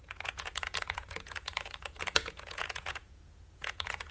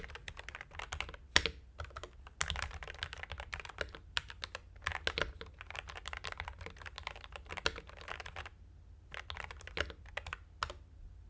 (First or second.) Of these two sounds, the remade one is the first